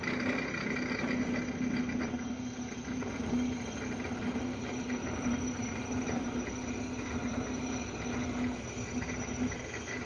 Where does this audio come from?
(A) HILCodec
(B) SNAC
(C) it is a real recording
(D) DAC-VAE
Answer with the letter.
C